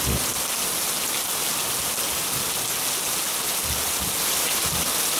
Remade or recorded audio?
recorded